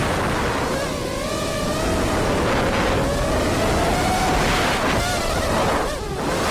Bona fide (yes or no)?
yes